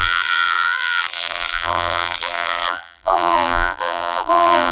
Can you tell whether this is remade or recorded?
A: remade